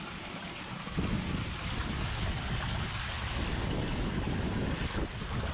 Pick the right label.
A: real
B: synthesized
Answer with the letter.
A